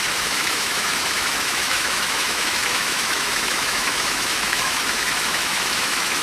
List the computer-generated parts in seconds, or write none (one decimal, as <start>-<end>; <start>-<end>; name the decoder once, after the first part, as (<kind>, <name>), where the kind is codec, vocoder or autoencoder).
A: 0.0-6.2 (autoencoder, DAC-VAE)